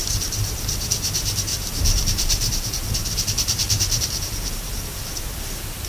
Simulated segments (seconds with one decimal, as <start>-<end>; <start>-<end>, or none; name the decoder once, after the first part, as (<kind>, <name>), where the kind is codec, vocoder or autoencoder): 0.0-0.8 (vocoder, BigVGAN v2); 1.5-5.0